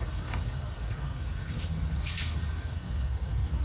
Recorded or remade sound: remade